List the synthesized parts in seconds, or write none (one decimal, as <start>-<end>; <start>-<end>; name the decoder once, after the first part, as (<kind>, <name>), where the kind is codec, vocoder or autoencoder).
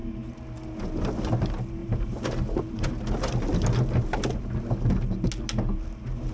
1.8-2.9 (vocoder, BigVGAN v2)